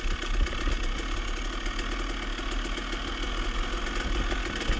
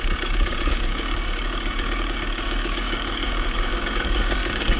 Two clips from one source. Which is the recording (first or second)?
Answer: first